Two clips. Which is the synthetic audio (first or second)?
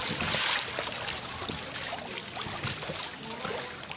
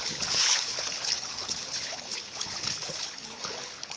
second